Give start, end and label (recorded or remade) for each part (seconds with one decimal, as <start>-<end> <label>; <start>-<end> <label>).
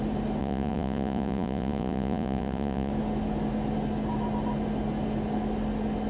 0.0-0.4 recorded; 0.4-2.9 remade; 2.9-6.1 recorded